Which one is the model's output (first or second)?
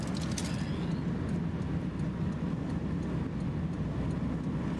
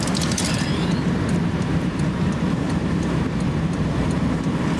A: second